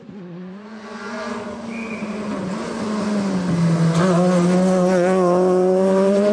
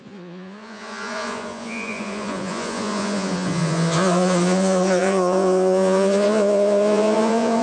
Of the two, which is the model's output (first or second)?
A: second